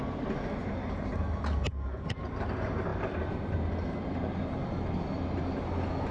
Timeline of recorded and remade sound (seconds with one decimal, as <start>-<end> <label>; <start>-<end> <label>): 0.0-6.1 recorded